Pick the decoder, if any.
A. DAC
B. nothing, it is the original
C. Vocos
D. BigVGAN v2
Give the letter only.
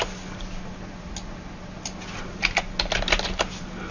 B